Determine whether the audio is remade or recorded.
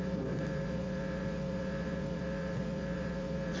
remade